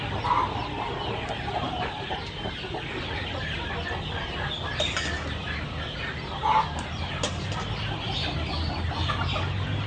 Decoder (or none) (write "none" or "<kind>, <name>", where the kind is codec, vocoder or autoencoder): none